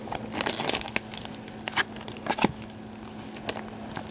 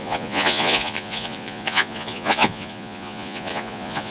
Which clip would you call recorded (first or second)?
first